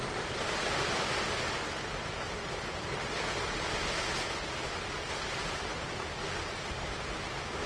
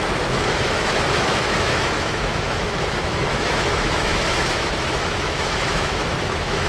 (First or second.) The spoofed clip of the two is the second